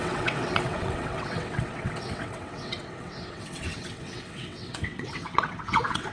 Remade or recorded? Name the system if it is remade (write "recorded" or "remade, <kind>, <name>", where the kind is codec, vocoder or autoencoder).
remade, vocoder, WaveNeXt